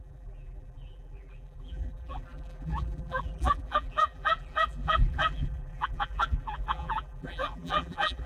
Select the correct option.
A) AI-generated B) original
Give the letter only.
A